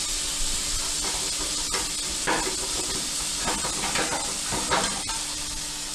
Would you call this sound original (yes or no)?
yes